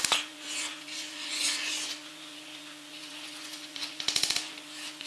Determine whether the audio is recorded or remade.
remade